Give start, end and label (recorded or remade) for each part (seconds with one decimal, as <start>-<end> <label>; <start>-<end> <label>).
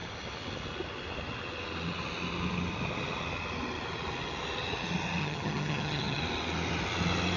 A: 0.0-5.2 recorded; 5.2-6.2 remade; 6.2-7.4 recorded